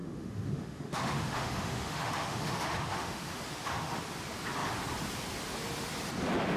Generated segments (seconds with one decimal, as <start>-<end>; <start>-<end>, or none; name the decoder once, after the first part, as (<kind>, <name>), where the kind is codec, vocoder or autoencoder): 0.0-4.0 (autoencoder, DAC-VAE)

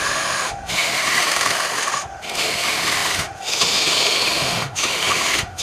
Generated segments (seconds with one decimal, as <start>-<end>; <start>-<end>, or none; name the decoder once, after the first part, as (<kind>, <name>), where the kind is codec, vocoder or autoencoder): 0.0-5.6 (autoencoder, DAC-VAE)

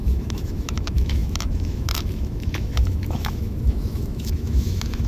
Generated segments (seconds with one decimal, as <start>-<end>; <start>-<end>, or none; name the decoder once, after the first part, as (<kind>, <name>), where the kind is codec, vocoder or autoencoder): 0.0-5.1 (autoencoder, DAC-VAE)